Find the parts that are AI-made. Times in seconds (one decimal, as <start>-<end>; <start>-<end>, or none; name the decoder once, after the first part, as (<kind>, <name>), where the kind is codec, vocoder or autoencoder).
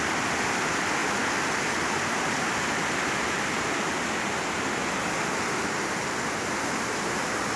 none